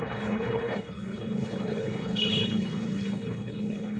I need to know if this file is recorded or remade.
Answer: remade